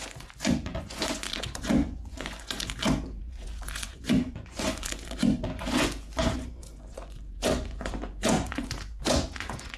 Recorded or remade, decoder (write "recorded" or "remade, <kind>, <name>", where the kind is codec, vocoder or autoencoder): remade, vocoder, Vocos